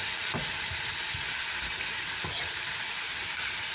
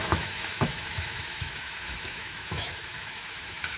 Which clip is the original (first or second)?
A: first